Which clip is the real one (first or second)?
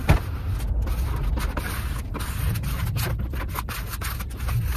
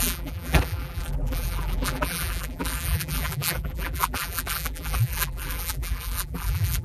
first